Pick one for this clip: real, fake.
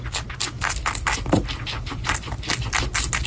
real